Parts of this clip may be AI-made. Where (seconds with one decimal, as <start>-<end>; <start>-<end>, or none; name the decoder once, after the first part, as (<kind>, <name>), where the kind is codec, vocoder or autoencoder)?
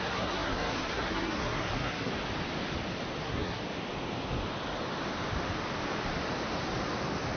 0.0-2.1 (codec, SNAC); 3.2-3.6